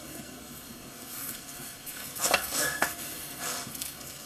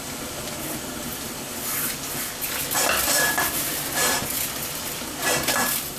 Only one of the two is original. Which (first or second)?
second